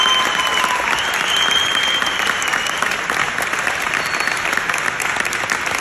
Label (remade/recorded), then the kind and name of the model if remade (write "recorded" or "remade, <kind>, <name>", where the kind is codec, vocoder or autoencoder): recorded